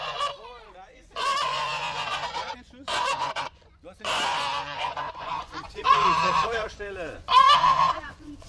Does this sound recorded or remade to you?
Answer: remade